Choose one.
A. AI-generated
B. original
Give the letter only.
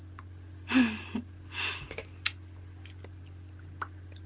B